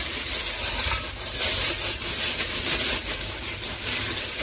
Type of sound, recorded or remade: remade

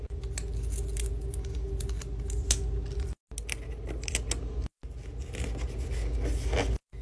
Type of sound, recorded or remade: recorded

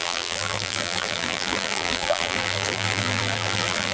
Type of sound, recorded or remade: remade